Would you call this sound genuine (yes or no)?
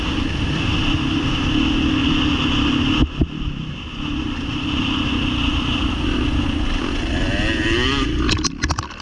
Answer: yes